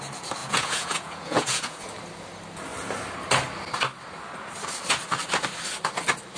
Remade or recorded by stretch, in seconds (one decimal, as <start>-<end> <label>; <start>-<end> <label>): 0.0-0.4 recorded; 0.4-1.8 remade; 1.8-6.4 recorded